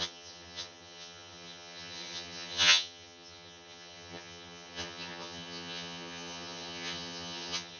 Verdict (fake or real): fake